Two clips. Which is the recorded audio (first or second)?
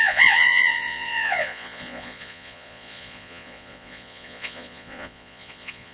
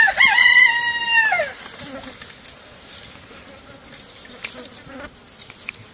second